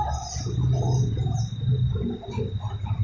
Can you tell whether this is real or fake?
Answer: real